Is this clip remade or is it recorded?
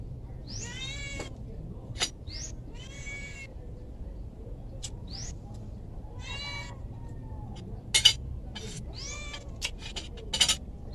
recorded